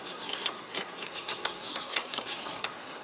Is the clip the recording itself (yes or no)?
no